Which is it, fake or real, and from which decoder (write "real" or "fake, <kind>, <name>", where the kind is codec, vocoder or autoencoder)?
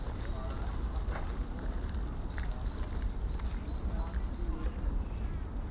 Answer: real